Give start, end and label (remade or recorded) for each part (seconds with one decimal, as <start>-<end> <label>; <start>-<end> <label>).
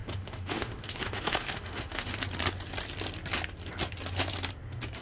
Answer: 0.0-2.2 remade; 2.2-5.0 recorded